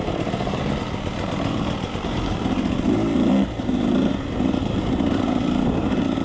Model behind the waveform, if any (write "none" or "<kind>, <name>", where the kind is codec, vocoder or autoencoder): vocoder, BigVGAN v2